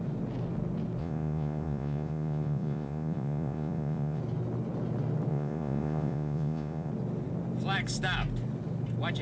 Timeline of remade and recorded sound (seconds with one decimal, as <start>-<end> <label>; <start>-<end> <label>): 0.0-1.0 recorded; 1.0-4.2 remade; 4.2-5.3 recorded; 5.3-6.9 remade; 6.9-9.2 recorded